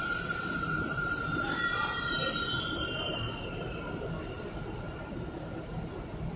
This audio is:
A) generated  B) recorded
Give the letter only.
B